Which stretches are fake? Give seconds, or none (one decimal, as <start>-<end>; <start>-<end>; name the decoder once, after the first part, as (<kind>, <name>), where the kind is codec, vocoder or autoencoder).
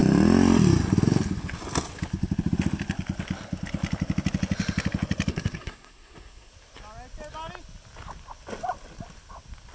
5.3-6.5 (codec, SNAC)